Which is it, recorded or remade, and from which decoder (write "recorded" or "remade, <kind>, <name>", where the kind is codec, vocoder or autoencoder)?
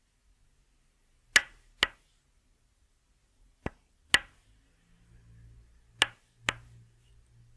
recorded